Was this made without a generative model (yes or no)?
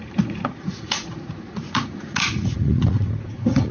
no